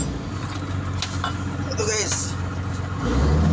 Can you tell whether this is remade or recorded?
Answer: recorded